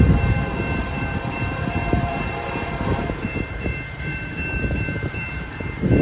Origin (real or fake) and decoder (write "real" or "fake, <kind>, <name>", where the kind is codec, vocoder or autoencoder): fake, vocoder, BigVGAN v2